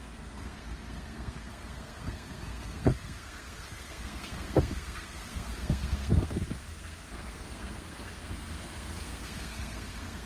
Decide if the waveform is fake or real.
fake